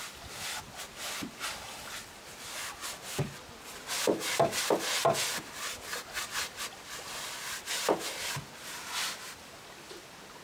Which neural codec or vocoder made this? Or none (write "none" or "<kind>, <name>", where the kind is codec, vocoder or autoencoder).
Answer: none